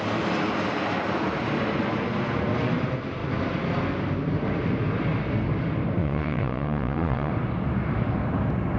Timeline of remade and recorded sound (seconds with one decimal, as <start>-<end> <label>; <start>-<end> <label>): 0.0-6.0 recorded; 6.0-7.3 remade; 7.3-8.8 recorded